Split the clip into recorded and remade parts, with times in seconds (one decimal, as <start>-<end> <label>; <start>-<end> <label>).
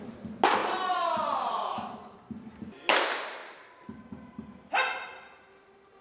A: 0.0-6.0 recorded